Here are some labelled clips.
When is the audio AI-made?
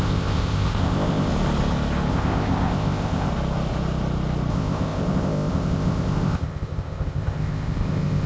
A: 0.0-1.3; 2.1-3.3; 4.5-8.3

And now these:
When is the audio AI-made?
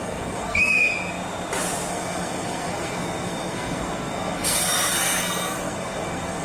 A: 0.0-0.9; 1.9-6.4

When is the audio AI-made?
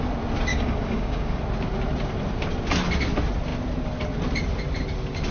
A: 0.5-1.4